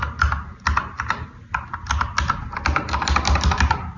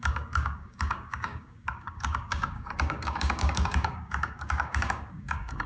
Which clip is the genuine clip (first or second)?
first